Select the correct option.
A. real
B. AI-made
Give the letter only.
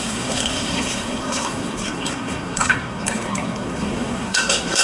B